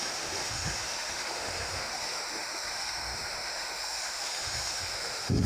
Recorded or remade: remade